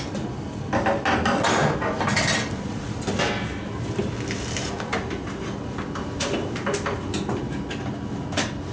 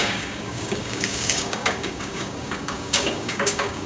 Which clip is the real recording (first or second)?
first